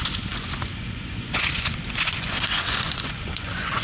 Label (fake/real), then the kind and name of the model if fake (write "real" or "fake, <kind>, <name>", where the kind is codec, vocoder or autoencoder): fake, vocoder, Vocos